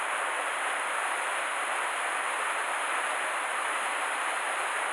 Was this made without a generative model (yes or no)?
no